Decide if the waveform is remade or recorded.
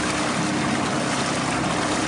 recorded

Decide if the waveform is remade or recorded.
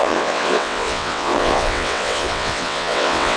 remade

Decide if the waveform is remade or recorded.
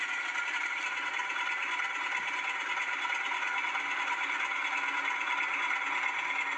recorded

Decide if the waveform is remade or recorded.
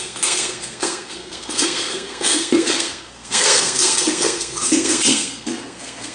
remade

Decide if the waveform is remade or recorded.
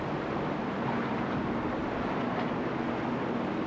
recorded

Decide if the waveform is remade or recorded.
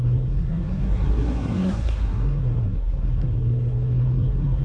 remade